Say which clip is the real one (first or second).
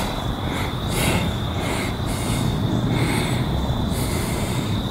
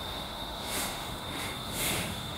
first